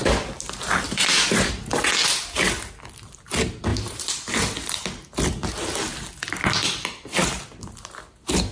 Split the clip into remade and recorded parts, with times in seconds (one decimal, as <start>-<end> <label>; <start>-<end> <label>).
0.0-3.7 recorded; 3.7-4.3 remade; 4.3-8.5 recorded